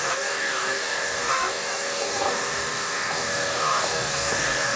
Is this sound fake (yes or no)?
yes